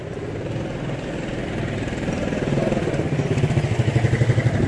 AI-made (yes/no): yes